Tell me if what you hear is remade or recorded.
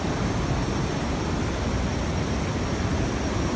recorded